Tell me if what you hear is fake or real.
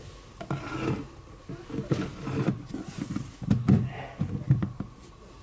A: real